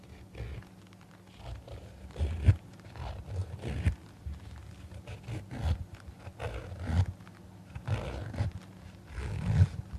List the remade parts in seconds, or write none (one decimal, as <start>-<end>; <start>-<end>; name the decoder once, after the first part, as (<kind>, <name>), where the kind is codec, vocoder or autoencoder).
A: none